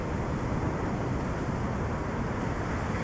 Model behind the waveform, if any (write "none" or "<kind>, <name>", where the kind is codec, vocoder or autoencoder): none